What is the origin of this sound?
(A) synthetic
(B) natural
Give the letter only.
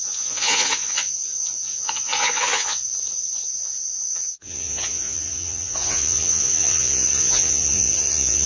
A